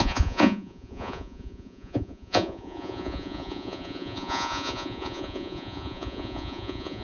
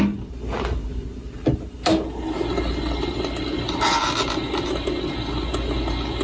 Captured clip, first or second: second